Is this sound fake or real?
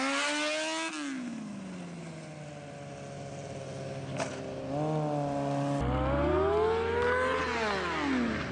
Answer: real